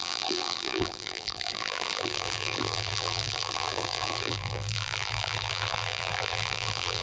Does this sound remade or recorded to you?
remade